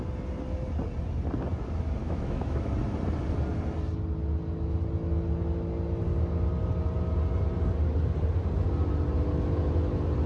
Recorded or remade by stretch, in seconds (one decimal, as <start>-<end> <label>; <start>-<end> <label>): 0.0-2.0 recorded; 2.0-2.7 remade; 2.7-10.3 recorded